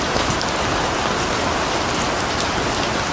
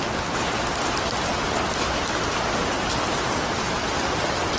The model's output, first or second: first